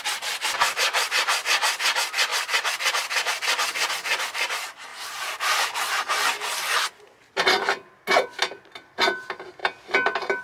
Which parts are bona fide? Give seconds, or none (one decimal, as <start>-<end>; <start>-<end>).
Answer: 0.0-10.4